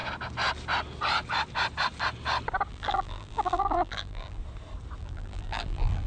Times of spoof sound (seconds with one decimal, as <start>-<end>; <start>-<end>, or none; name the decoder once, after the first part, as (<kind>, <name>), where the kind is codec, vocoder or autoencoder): 2.7-4.4 (vocoder, BigVGAN v2); 5.0-6.1